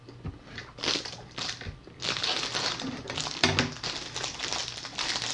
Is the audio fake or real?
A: real